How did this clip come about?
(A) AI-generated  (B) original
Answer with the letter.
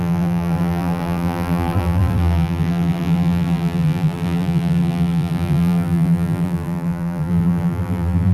A